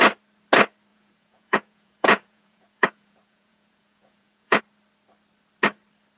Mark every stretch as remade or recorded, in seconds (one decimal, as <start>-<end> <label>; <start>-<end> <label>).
0.0-0.9 recorded; 0.9-4.6 remade; 4.6-6.2 recorded